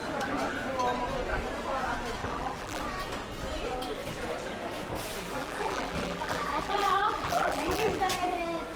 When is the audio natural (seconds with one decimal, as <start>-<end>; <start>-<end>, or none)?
0.0-2.2; 2.8-5.4; 8.0-8.8